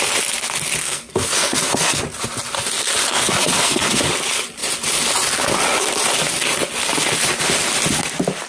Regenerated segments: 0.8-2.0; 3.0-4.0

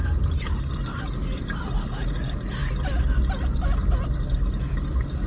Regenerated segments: 0.0-0.7

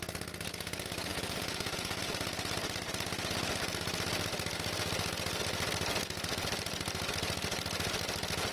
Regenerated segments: 1.1-2.0

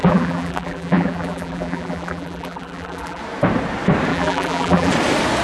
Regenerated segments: 0.0-3.2; 4.1-4.9

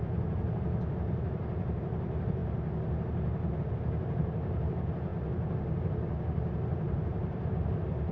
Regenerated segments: none